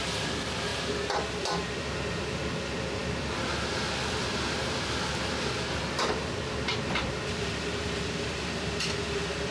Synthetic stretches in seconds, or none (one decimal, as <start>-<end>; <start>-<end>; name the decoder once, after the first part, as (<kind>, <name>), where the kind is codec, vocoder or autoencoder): 0.0-0.7 (vocoder, BigVGAN v2); 1.3-9.5